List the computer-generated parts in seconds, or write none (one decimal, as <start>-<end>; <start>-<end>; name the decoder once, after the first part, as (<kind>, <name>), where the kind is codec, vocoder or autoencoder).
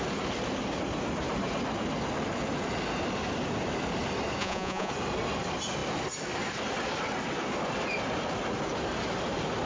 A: 4.4-4.9 (vocoder, Vocos)